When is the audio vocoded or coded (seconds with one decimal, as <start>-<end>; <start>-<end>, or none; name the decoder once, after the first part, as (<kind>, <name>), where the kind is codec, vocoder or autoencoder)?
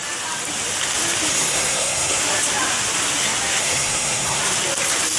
1.3-2.2 (codec, SNAC); 3.6-4.4